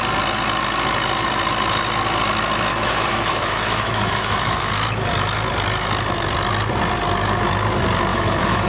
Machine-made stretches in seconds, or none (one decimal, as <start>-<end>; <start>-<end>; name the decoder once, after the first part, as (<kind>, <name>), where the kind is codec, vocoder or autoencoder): 2.7-4.7 (autoencoder, DAC-VAE); 8.1-8.7